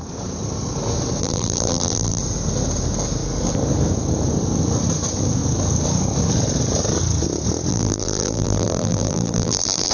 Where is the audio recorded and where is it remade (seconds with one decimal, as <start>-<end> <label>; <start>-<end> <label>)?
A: 0.0-1.2 recorded; 1.2-2.2 remade; 2.2-7.7 recorded; 7.7-9.9 remade